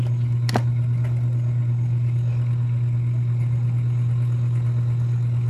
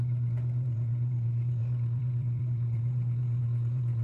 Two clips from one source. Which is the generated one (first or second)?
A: second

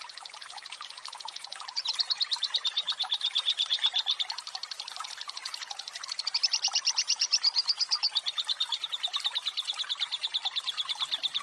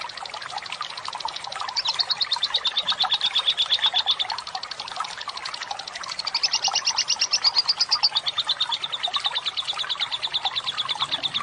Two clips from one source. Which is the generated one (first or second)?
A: first